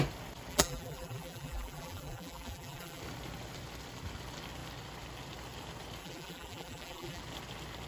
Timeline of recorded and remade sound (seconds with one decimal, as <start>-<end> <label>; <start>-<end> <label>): 0.0-0.5 recorded; 0.5-3.0 remade; 3.0-6.0 recorded; 6.0-7.2 remade; 7.2-7.9 recorded